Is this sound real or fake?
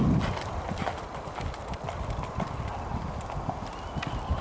real